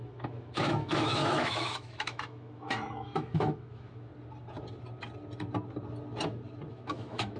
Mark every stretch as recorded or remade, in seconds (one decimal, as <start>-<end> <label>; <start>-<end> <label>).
0.0-4.1 remade; 4.1-6.7 recorded; 6.7-7.4 remade